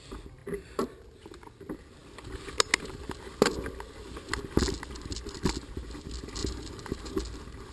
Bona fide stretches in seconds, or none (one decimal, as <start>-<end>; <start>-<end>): 0.0-0.4; 1.0-6.4; 7.1-7.7